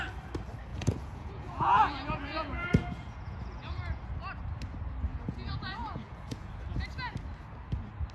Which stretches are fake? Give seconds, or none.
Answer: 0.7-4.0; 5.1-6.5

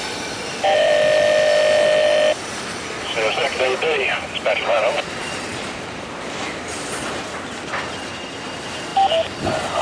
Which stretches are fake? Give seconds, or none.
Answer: 3.4-7.0

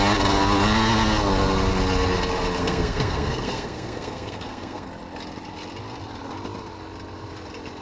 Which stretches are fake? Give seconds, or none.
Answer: 2.6-4.9

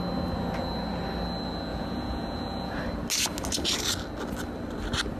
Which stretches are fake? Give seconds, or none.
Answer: 1.7-2.8

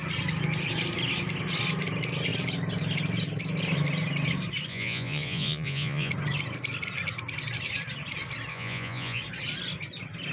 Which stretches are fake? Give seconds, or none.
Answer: 4.7-6.1; 8.5-9.2

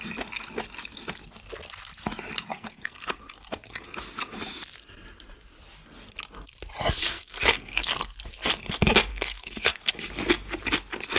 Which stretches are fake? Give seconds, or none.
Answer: 2.5-3.2; 7.0-7.9; 9.1-9.9

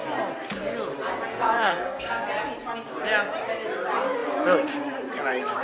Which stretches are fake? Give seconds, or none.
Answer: 1.3-2.1

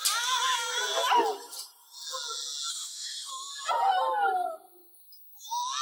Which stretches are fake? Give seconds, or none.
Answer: 2.7-3.3